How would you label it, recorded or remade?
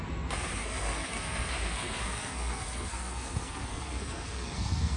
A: remade